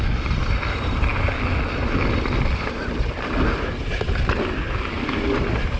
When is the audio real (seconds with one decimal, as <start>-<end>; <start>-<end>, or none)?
0.0-5.8